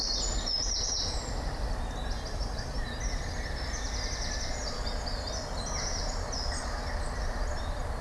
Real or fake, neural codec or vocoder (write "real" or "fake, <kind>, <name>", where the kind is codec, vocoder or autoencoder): real